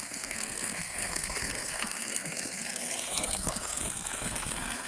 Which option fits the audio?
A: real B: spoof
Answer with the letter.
B